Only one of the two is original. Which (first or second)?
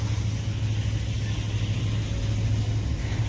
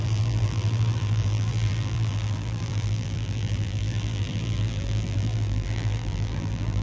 first